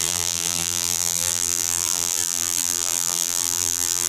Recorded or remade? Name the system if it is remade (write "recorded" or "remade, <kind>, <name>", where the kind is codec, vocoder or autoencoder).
remade, vocoder, BigVGAN v2